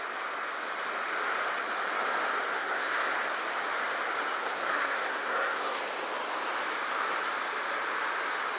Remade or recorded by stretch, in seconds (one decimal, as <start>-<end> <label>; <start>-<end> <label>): 0.0-2.5 recorded; 2.5-3.1 remade; 3.1-4.4 recorded; 4.4-5.8 remade; 5.8-8.6 recorded